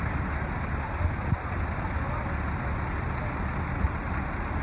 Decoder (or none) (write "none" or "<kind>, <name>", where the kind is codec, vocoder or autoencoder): none